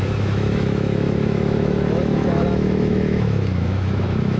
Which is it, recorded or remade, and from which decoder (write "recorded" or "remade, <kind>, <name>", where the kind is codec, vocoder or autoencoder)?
remade, autoencoder, DAC-VAE